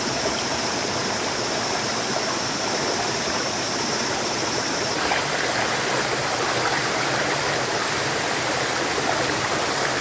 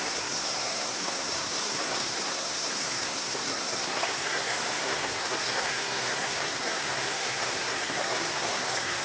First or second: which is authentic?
first